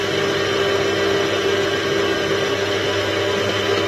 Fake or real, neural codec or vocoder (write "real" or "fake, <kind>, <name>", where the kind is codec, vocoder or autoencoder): real